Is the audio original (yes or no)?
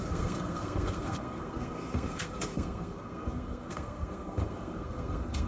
no